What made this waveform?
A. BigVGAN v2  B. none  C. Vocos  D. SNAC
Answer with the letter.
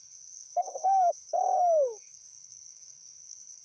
D